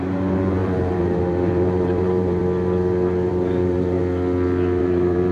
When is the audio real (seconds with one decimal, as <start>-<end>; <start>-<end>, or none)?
2.4-3.3; 4.0-4.8